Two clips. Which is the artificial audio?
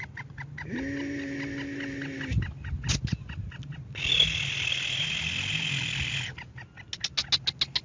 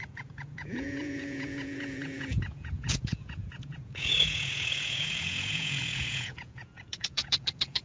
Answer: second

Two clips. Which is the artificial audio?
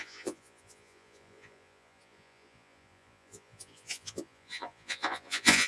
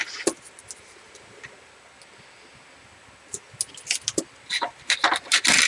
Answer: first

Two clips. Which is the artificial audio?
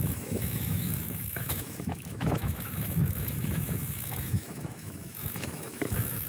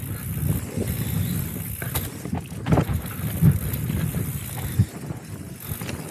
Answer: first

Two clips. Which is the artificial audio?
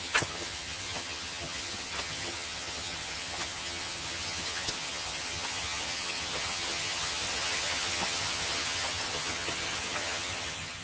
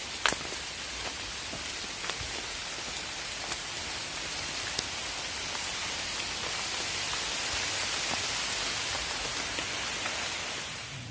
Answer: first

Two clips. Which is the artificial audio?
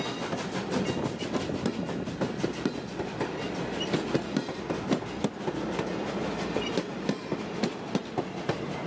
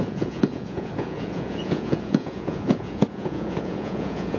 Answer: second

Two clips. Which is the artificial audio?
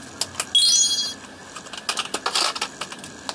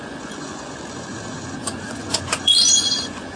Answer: second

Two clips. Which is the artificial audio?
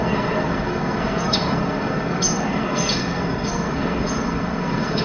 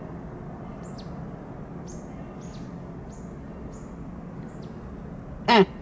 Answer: first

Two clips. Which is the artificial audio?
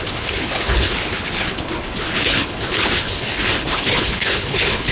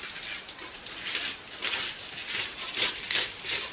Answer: first